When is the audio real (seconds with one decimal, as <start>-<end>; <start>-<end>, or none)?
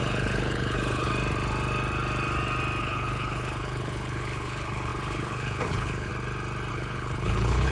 1.1-2.8; 6.1-6.7